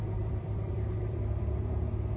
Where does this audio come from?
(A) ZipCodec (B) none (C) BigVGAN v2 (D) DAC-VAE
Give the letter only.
C